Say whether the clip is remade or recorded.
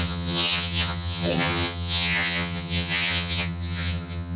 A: remade